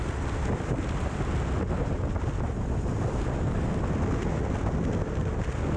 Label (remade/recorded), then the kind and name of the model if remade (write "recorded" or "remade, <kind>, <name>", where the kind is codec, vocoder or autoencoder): recorded